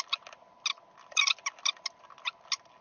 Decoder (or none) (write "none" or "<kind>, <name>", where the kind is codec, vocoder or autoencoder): none